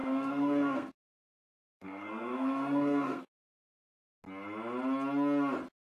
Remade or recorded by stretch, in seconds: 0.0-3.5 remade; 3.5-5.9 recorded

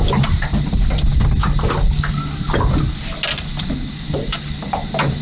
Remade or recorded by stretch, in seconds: 0.0-5.2 recorded

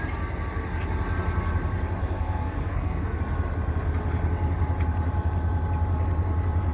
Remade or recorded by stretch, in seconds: 0.0-2.0 recorded; 2.0-3.2 remade; 3.2-6.7 recorded

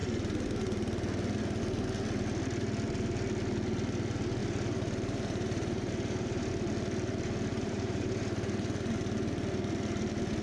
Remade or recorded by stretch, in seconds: 0.0-4.4 recorded; 4.4-6.5 remade; 6.5-7.5 recorded; 7.5-8.9 remade; 8.9-10.4 recorded

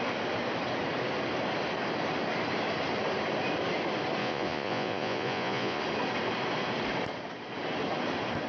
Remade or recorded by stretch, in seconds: 0.0-4.2 recorded; 4.2-5.8 remade; 5.8-8.5 recorded

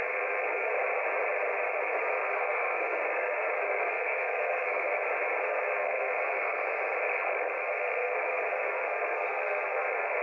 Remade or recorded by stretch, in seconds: 0.0-0.7 remade; 0.7-2.0 recorded; 2.0-4.9 remade; 4.9-5.4 recorded; 5.4-6.6 remade; 6.6-7.6 recorded; 7.6-10.2 remade

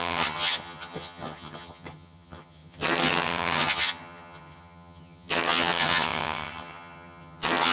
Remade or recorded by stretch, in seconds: 0.0-7.7 remade

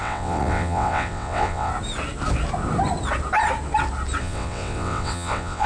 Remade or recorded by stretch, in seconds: 0.0-1.7 remade; 1.7-4.2 recorded; 4.2-5.7 remade